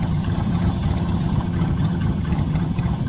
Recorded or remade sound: remade